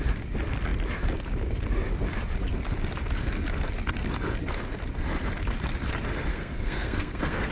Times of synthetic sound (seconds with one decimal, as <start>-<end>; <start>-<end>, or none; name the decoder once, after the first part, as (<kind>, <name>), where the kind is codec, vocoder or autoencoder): 6.3-7.5 (codec, SNAC)

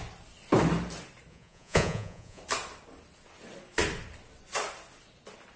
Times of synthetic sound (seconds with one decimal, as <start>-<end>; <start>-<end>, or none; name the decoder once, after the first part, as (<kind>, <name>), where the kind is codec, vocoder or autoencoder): 1.3-2.4 (vocoder, Vocos)

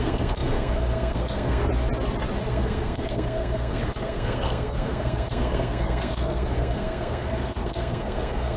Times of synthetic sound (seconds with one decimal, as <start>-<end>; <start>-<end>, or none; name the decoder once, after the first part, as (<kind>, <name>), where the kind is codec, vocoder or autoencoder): 0.0-1.7 (codec, SNAC); 2.5-8.6

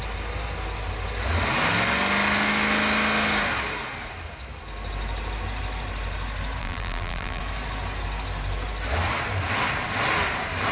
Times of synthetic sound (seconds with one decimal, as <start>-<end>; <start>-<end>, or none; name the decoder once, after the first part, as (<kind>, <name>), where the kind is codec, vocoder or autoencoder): 6.6-7.4 (vocoder, BigVGAN v2)

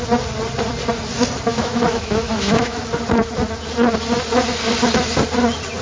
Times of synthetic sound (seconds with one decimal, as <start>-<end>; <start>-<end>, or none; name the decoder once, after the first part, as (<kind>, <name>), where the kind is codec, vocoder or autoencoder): 1.5-2.8 (autoencoder, DAC-VAE)

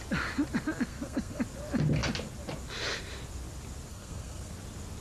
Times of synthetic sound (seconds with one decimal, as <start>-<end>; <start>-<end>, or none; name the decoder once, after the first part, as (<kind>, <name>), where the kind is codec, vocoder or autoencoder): 0.9-1.4 (codec, SNAC); 3.9-4.5

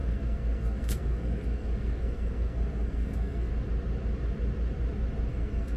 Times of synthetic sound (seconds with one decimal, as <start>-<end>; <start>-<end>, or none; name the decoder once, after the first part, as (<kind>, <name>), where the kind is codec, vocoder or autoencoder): 0.0-3.5 (codec, SNAC); 5.3-5.8